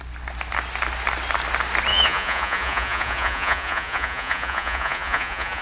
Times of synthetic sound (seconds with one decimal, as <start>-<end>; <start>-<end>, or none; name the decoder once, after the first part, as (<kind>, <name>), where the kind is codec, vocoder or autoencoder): 1.9-5.6 (vocoder, Vocos)